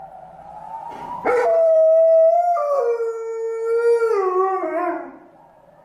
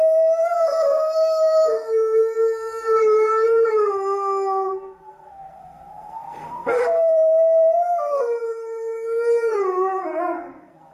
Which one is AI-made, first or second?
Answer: second